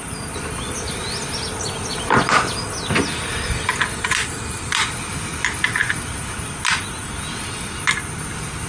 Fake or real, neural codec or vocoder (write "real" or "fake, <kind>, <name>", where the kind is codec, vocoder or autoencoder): real